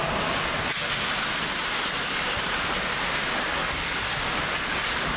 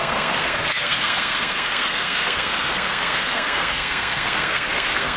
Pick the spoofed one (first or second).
second